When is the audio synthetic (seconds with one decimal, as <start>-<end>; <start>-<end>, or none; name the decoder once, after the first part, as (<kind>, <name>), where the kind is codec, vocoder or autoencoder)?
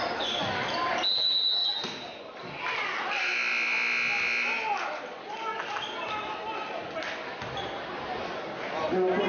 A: none